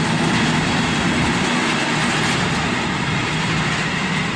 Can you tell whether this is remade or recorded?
recorded